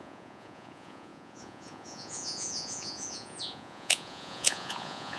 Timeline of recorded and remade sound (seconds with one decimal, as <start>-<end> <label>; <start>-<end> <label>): 0.0-5.2 remade